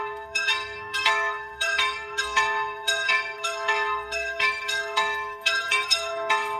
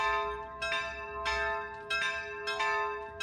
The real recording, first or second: second